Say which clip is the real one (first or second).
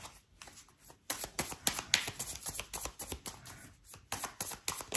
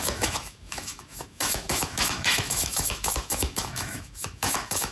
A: first